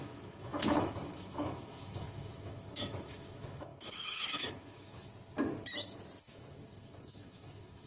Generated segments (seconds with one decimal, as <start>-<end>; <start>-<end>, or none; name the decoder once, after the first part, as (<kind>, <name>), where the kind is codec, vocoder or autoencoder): 0.0-5.1 (autoencoder, DAC-VAE); 6.2-7.9